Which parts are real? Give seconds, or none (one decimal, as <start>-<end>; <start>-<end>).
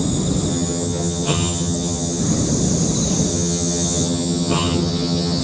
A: 0.0-0.5; 2.2-3.3